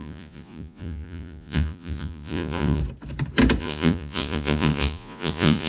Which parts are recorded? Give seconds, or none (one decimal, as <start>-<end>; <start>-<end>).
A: 2.8-3.6